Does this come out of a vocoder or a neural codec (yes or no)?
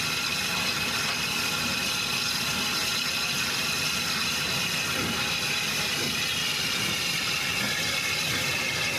no